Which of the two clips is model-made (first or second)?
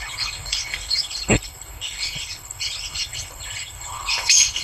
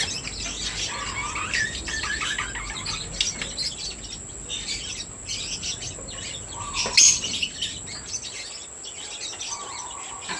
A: first